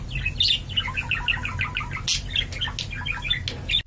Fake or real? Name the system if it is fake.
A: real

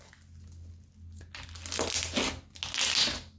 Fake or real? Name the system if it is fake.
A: real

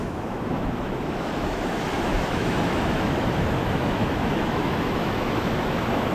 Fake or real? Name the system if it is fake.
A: fake, autoencoder, DAC-VAE